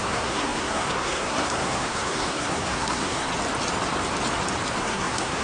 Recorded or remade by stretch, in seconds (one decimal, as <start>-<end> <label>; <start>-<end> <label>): 0.0-3.3 remade; 3.3-4.8 recorded; 4.8-5.4 remade

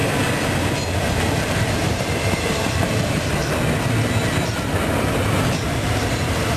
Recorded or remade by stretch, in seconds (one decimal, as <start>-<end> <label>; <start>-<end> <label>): 0.0-1.0 recorded; 1.0-3.4 remade; 3.4-5.6 recorded; 5.6-6.6 remade